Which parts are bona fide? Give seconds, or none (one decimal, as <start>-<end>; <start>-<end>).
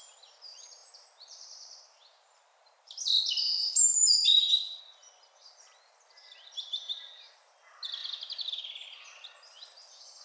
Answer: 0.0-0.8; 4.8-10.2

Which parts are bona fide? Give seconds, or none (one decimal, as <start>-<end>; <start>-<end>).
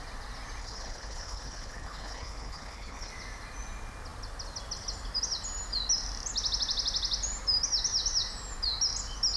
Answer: 0.0-0.6; 3.1-9.4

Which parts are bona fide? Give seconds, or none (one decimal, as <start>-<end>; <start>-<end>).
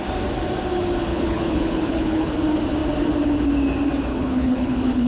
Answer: 0.0-1.1; 2.3-4.1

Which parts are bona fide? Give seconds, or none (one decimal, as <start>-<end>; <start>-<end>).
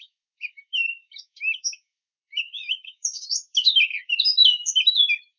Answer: none